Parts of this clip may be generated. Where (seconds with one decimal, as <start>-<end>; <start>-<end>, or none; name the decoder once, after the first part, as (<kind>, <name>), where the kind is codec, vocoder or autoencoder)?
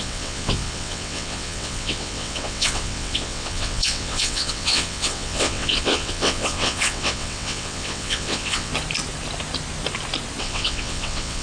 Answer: 0.0-8.7 (vocoder, WaveNeXt); 10.4-11.4